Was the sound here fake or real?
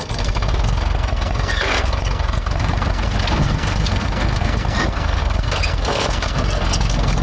fake